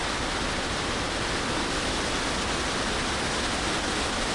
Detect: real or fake real